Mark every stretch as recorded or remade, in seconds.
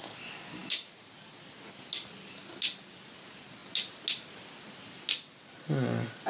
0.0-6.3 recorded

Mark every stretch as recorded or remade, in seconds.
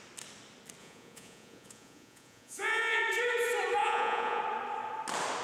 0.0-0.8 recorded; 0.8-3.0 remade; 3.0-3.8 recorded; 3.8-4.4 remade; 4.4-5.4 recorded